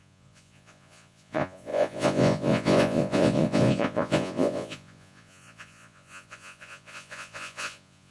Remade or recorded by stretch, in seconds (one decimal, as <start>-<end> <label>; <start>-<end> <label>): 0.0-8.1 remade